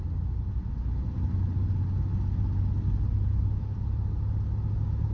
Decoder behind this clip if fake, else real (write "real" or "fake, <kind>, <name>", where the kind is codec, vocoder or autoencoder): real